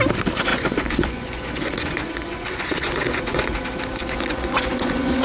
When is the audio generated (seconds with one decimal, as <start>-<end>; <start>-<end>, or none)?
0.5-3.6; 4.0-5.2